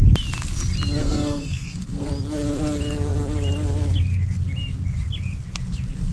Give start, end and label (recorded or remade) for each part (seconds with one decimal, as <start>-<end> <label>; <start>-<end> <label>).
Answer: 0.0-1.0 recorded; 1.0-2.1 remade; 2.1-6.1 recorded

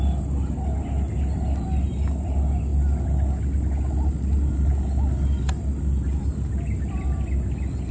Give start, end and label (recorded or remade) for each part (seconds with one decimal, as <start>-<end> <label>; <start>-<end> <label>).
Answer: 0.0-7.9 recorded